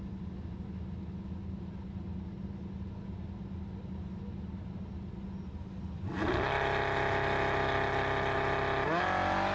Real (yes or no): yes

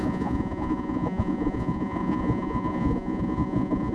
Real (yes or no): no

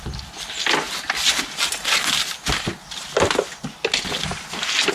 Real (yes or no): yes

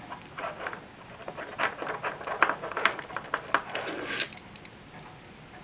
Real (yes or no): yes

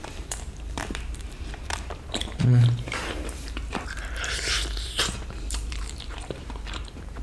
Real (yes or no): no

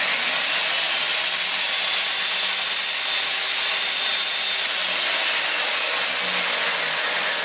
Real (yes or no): yes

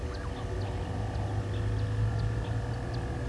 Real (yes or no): yes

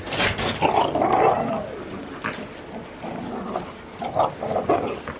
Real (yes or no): yes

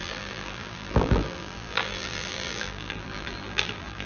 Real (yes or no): no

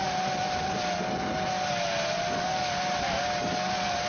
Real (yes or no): yes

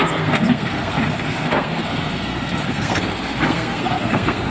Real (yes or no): no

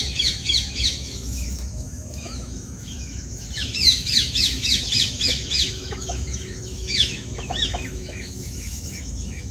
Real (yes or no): no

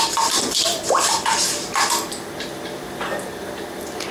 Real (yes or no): no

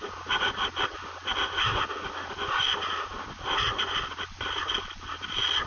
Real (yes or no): yes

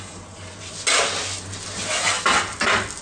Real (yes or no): yes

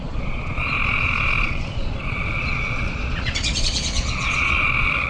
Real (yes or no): no